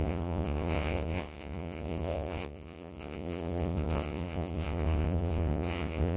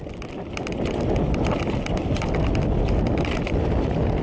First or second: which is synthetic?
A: first